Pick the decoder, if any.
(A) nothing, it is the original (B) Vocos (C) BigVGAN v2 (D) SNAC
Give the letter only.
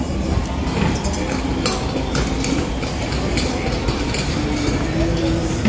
A